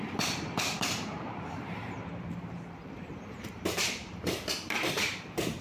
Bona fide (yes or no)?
no